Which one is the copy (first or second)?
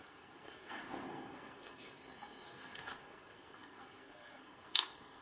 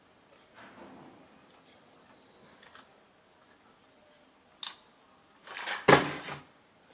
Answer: first